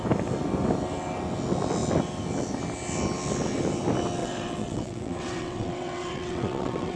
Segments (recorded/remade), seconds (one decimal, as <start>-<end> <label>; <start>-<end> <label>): 0.0-4.2 recorded; 4.2-7.0 remade